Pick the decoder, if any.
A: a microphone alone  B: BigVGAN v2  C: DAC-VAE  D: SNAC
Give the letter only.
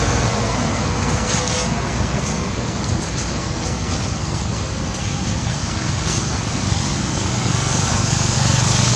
D